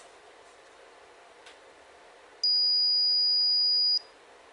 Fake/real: real